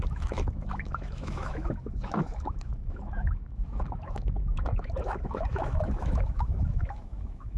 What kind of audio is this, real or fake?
fake